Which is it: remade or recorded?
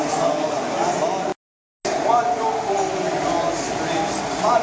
recorded